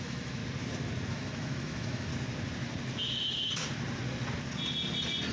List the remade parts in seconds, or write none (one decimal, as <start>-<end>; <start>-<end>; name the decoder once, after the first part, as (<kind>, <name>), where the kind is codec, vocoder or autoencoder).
0.0-0.4 (autoencoder, DAC-VAE); 1.1-2.1